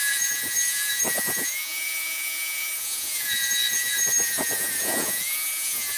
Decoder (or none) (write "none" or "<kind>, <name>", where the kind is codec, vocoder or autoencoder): vocoder, Vocos